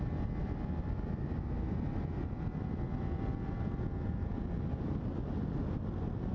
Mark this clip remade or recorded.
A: recorded